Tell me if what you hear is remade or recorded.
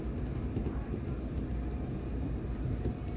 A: recorded